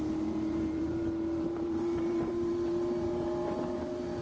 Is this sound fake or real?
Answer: fake